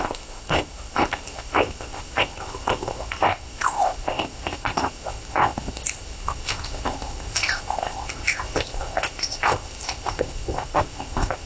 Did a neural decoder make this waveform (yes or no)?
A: yes